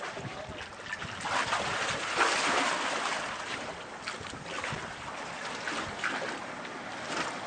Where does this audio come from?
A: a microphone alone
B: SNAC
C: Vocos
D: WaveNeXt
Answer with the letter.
A